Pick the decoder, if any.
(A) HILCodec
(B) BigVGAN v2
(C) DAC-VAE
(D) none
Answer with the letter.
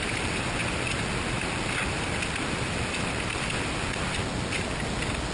D